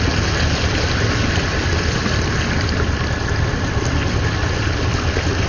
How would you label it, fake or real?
real